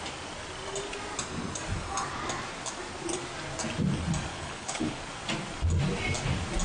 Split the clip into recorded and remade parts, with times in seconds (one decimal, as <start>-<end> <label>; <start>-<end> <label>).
0.0-4.3 recorded; 4.3-5.0 remade; 5.0-6.6 recorded